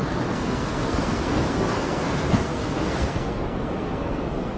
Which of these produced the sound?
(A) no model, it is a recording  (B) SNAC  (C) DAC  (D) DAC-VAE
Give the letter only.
B